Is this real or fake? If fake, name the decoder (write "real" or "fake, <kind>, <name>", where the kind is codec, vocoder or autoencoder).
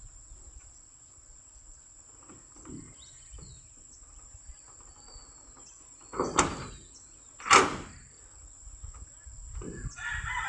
real